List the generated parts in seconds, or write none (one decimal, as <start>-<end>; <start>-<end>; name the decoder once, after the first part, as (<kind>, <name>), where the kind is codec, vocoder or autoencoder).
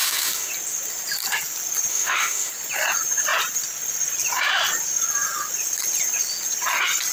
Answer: 0.0-0.5 (autoencoder, DAC-VAE); 1.9-2.5